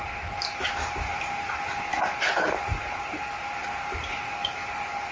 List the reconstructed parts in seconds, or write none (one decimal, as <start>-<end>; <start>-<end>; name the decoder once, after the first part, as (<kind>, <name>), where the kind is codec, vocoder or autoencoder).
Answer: 0.0-5.1 (vocoder, BigVGAN v2)